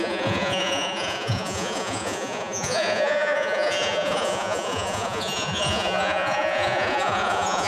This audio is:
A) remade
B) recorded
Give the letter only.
A